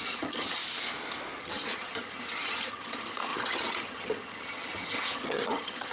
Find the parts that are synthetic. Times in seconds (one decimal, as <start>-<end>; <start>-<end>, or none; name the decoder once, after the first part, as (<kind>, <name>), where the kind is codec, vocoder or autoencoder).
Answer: 0.0-0.6 (vocoder, HiFi-GAN); 1.4-5.9